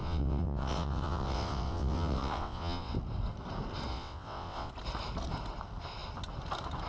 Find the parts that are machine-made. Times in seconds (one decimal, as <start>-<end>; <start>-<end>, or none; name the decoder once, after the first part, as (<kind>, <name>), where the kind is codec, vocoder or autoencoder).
0.0-2.9 (vocoder, WaveNeXt); 3.9-4.7